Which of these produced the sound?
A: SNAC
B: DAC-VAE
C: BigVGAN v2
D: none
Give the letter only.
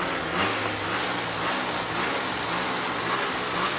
D